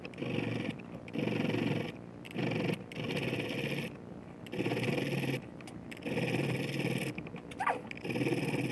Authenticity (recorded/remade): recorded